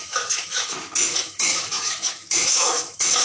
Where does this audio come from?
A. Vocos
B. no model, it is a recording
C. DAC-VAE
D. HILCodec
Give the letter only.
C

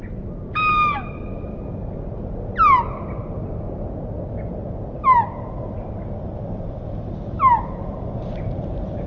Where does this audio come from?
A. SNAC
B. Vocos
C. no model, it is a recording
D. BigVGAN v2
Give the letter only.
C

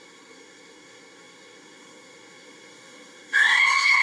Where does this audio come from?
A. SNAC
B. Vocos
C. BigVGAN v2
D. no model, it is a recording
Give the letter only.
A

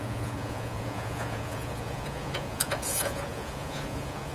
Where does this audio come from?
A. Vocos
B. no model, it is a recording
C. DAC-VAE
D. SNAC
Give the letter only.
A